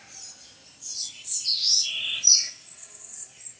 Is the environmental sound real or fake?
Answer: real